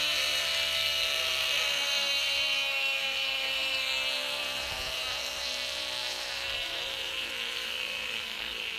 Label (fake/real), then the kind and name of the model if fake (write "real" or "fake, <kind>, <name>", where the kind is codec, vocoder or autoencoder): fake, codec, SNAC